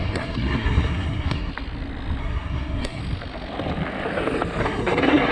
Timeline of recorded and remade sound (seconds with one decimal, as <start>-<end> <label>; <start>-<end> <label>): 0.0-1.5 remade; 1.5-2.2 recorded; 2.2-3.0 remade; 3.0-4.6 recorded; 4.6-5.3 remade